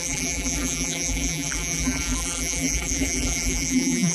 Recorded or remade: remade